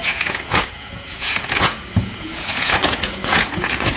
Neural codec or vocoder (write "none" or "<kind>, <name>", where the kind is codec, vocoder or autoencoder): vocoder, Vocos